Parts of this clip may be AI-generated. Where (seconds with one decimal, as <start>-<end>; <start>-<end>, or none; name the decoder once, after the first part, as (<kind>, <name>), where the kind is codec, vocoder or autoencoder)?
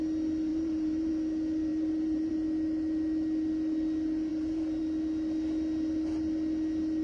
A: 0.5-1.1 (vocoder, BigVGAN v2); 1.7-2.3; 4.3-4.8